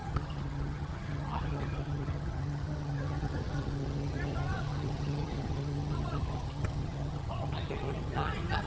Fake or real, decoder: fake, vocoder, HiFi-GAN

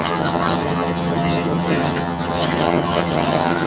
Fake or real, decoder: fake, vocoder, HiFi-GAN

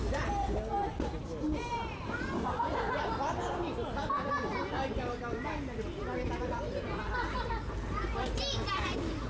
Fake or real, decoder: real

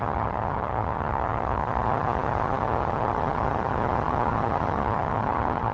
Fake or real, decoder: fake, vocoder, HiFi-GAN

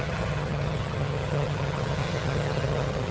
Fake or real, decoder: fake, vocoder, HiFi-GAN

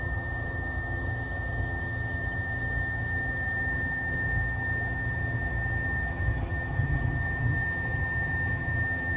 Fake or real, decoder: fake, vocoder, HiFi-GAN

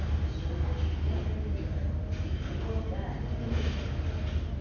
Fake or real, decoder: real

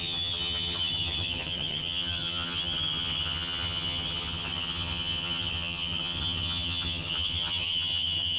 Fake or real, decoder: fake, vocoder, HiFi-GAN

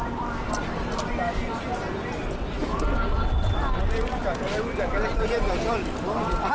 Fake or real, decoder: real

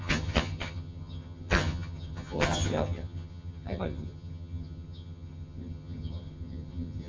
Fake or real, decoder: fake, vocoder, HiFi-GAN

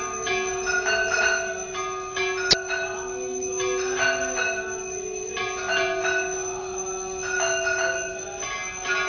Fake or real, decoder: real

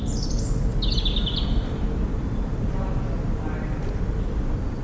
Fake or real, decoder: real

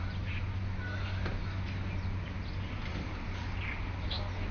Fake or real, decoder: real